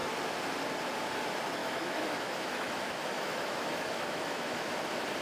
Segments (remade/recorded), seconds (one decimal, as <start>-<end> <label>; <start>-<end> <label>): 0.0-1.6 recorded; 1.6-4.7 remade; 4.7-5.2 recorded